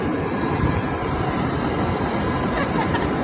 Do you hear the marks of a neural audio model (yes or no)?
yes